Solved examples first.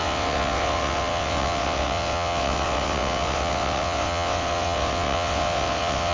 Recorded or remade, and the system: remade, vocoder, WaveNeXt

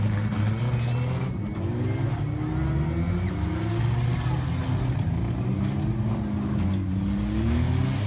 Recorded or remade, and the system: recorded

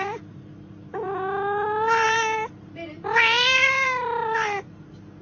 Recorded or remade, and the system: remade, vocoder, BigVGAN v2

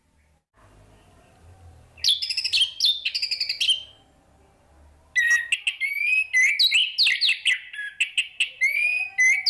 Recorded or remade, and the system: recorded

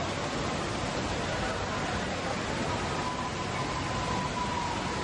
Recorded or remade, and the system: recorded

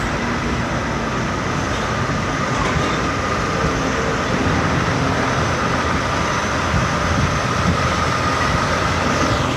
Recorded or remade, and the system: recorded